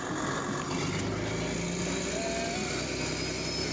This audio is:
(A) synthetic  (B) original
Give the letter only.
B